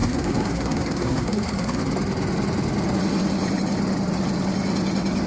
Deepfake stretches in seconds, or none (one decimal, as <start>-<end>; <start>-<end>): 0.0-1.8